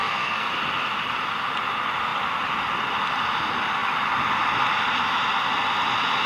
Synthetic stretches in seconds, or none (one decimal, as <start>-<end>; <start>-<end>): 0.0-0.5